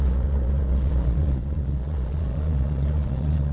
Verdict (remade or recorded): remade